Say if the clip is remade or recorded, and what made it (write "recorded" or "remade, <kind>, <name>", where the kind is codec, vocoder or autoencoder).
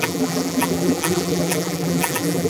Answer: remade, vocoder, BigVGAN v2